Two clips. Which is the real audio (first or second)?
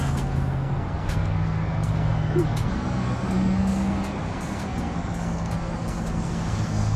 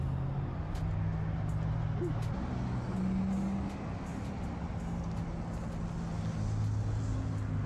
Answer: second